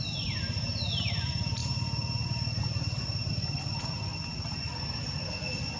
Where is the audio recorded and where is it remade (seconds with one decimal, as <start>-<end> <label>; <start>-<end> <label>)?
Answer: 0.0-5.8 recorded